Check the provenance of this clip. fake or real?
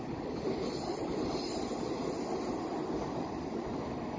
real